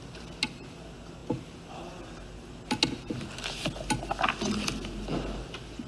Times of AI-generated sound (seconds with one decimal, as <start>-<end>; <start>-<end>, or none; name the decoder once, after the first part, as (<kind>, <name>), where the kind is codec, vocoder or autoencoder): none